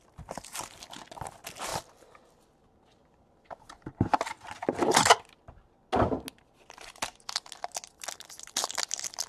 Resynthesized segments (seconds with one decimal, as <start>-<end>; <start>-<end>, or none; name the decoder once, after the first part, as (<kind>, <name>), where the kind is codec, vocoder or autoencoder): none